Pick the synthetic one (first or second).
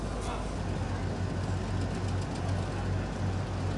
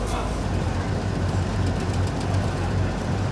second